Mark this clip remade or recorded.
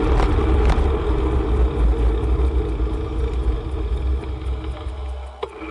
recorded